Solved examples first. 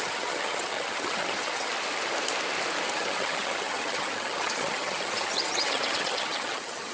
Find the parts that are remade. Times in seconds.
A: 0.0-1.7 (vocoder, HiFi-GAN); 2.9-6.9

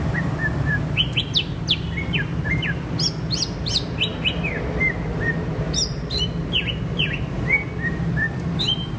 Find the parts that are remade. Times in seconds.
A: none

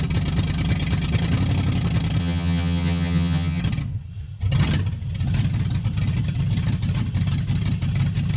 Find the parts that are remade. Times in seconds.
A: 2.2-3.6 (vocoder, HiFi-GAN)

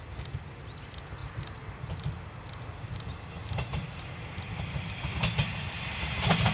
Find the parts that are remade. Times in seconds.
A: none